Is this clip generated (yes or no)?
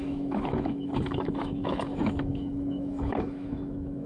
yes